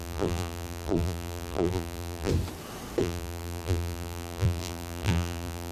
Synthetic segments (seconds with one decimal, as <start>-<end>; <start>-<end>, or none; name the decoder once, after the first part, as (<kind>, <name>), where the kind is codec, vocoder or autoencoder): 0.0-2.3 (vocoder, BigVGAN v2); 3.0-5.7